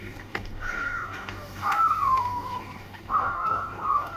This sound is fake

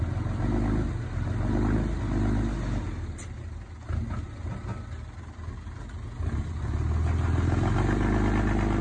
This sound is real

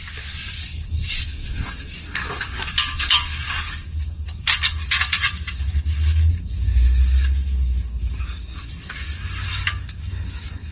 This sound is fake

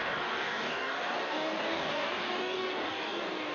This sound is fake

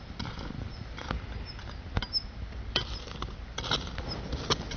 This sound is real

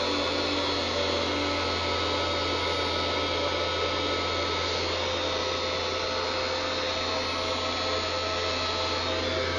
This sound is real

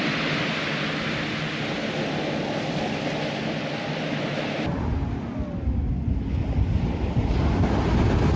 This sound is real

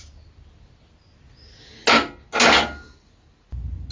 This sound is real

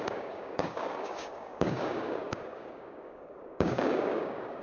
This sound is fake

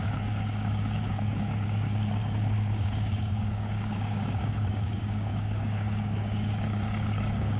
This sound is fake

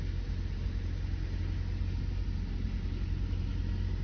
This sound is real